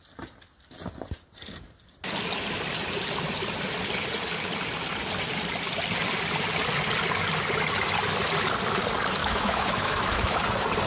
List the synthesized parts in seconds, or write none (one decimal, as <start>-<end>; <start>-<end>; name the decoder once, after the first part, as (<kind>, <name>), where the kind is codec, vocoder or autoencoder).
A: 9.2-10.4 (autoencoder, DAC-VAE)